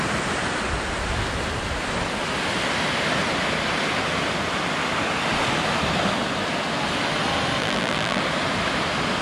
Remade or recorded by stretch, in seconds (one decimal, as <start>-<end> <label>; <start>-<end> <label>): 0.0-7.6 recorded; 7.6-8.2 remade; 8.2-9.2 recorded